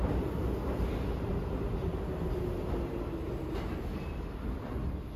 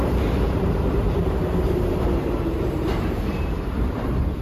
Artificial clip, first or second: second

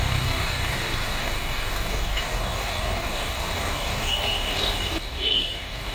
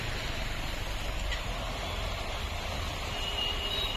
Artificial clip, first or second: first